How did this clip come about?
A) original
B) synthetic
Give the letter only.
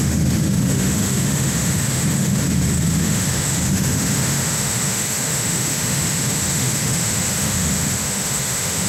B